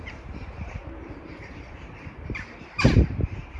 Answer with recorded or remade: remade